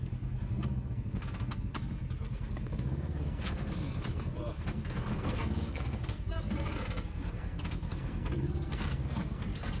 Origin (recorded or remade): remade